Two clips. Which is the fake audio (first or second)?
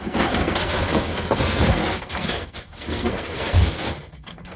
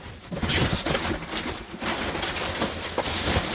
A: first